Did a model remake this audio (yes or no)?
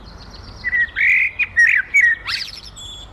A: no